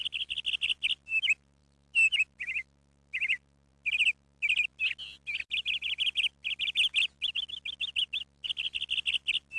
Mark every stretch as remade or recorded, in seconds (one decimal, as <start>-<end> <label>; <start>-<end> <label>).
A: 0.0-9.6 recorded